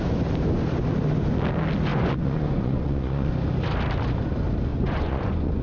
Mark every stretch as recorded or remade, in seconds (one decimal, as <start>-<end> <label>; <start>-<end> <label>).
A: 0.0-1.9 recorded; 1.9-3.3 remade; 3.3-4.7 recorded; 4.7-5.6 remade

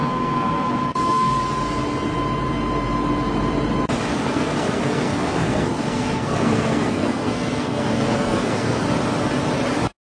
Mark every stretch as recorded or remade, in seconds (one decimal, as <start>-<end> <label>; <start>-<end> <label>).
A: 0.0-1.4 remade; 1.4-4.1 recorded; 4.1-8.8 remade; 8.8-10.1 recorded

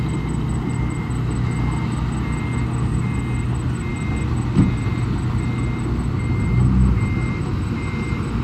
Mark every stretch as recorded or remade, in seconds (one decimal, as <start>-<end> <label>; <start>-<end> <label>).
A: 0.0-8.4 recorded

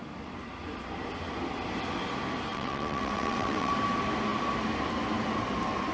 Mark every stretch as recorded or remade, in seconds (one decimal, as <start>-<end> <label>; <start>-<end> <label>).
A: 0.0-2.5 recorded; 2.5-3.7 remade; 3.7-5.9 recorded

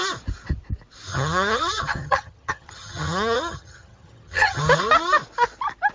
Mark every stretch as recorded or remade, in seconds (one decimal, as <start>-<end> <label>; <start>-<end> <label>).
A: 0.0-1.1 recorded; 1.1-4.6 remade; 4.6-5.9 recorded

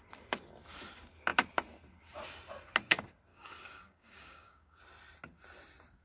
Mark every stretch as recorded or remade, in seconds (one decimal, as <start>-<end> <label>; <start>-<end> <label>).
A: 0.0-3.3 recorded; 3.3-4.8 remade; 4.8-6.0 recorded